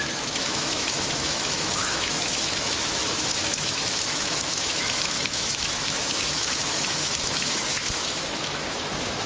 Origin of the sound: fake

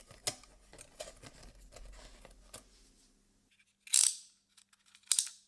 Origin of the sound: real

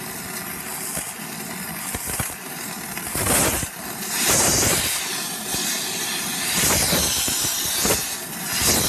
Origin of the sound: real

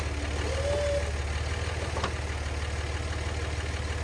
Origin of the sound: real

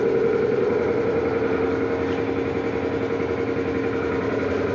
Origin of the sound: real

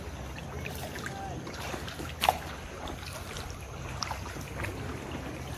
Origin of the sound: real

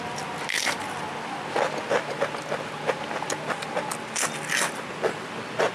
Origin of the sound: real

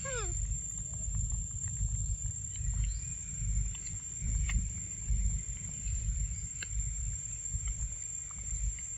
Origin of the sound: fake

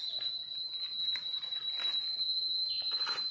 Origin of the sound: real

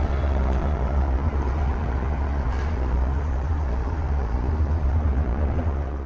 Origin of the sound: fake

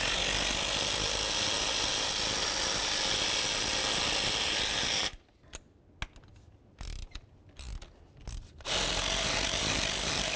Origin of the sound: real